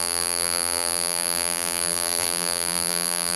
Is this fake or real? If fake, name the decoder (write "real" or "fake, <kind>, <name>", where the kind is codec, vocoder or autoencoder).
fake, vocoder, BigVGAN v2